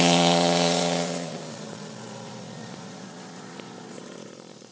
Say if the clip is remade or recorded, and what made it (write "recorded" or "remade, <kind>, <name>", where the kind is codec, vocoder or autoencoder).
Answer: remade, vocoder, Vocos